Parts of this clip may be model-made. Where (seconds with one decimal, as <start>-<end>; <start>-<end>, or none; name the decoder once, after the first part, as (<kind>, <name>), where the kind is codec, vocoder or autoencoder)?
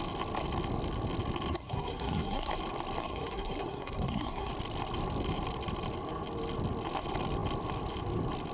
1.5-2.5 (codec, SNAC); 3.0-4.5